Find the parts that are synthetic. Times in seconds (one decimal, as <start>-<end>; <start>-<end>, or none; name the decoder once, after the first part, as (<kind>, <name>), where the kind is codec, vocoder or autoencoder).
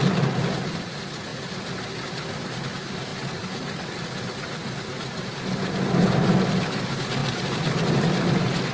none